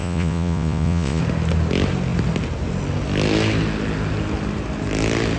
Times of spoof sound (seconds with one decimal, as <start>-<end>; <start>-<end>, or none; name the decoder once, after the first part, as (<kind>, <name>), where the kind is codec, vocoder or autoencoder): 0.0-1.2 (vocoder, Vocos)